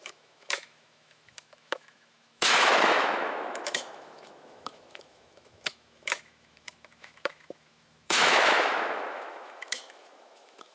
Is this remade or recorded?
remade